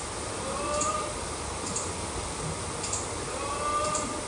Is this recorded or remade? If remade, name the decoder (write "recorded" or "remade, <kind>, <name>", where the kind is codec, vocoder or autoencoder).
recorded